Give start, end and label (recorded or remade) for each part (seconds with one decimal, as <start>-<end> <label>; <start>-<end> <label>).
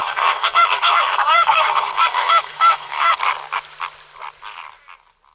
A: 0.0-3.2 remade; 3.2-5.3 recorded